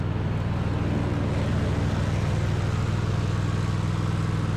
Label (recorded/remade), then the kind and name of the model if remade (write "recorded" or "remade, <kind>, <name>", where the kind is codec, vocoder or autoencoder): recorded